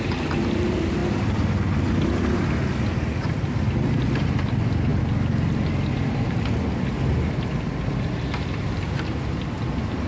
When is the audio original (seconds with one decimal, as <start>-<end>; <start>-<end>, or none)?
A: 0.0-10.1